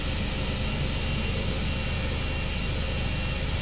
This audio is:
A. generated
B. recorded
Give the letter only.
B